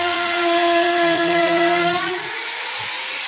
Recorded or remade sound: remade